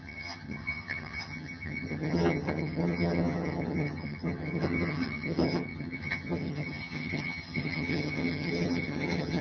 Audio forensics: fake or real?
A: fake